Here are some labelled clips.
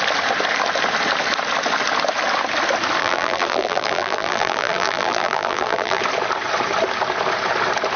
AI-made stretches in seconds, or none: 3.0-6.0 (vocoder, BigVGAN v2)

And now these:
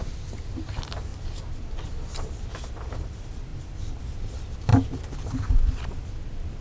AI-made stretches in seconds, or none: 1.1-1.8 (vocoder, BigVGAN v2); 3.5-4.0

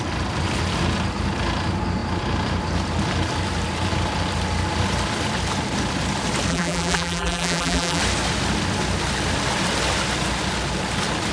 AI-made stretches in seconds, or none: 6.5-8.0 (vocoder, BigVGAN v2)

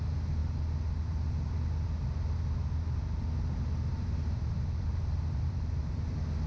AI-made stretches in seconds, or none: 3.9-6.1 (vocoder, BigVGAN v2)

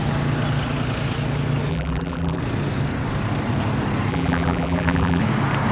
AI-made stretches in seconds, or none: 1.7-2.4 (vocoder, BigVGAN v2); 4.1-5.2

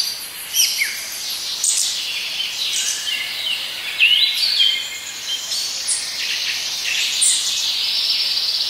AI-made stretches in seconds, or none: 0.0-3.8 (vocoder, BigVGAN v2); 6.7-8.7

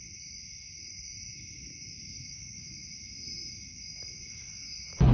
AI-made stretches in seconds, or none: 0.5-2.2 (vocoder, BigVGAN v2)